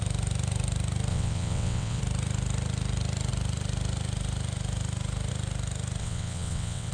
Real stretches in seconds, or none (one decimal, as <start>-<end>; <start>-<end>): 0.0-1.1; 2.0-6.0